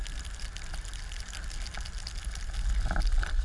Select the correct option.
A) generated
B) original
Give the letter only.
A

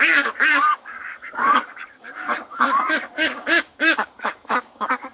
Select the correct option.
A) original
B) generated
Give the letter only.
B